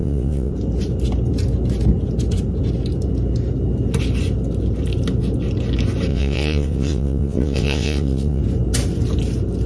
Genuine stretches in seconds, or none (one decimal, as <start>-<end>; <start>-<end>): 0.5-6.1; 8.4-9.7